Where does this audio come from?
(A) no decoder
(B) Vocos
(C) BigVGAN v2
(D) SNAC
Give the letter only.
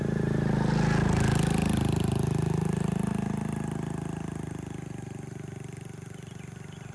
A